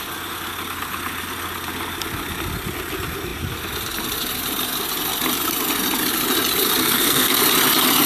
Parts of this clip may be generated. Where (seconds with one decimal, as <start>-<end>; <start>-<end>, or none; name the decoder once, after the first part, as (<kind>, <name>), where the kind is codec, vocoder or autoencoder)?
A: 6.8-7.4 (codec, SNAC)